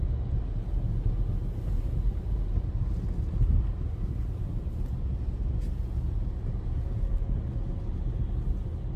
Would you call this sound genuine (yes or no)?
yes